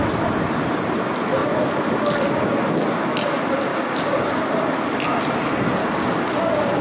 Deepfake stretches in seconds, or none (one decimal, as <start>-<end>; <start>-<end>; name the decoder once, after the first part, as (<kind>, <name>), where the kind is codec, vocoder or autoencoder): 3.7-4.4 (codec, DAC); 5.8-6.8